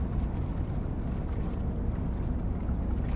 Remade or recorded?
recorded